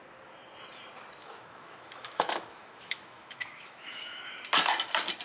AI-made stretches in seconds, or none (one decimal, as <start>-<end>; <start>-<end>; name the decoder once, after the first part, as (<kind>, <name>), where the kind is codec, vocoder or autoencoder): 1.2-4.3 (autoencoder, DAC-VAE)